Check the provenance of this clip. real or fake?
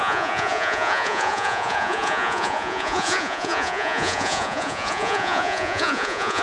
fake